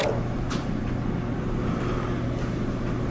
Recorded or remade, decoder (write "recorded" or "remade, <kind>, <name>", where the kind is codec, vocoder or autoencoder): recorded